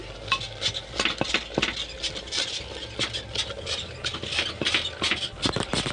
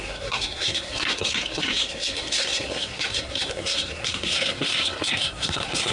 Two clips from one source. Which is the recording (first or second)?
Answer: first